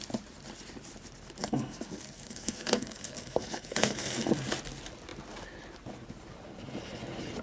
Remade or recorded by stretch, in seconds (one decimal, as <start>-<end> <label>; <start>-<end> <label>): 0.0-1.4 recorded; 1.4-4.3 remade; 4.3-7.4 recorded

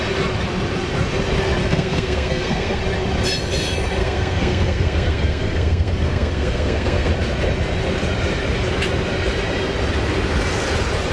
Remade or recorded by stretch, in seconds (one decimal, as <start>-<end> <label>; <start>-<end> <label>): 0.0-1.6 recorded; 1.6-2.8 remade; 2.8-4.0 recorded; 4.0-7.1 remade; 7.1-11.1 recorded

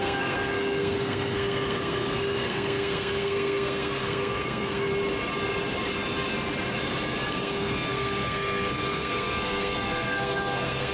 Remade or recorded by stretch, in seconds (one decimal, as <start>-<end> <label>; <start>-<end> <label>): 0.0-4.9 remade; 4.9-7.3 recorded; 7.3-10.9 remade

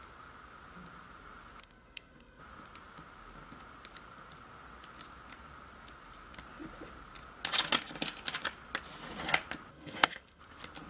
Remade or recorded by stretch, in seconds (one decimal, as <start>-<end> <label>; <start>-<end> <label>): 0.0-1.6 recorded; 1.6-2.4 remade; 2.4-9.7 recorded; 9.7-10.4 remade; 10.4-10.9 recorded